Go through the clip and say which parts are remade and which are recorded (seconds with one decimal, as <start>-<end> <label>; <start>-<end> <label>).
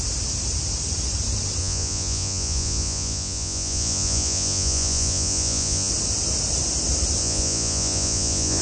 0.0-1.6 recorded; 1.6-5.9 remade; 5.9-7.2 recorded; 7.2-8.6 remade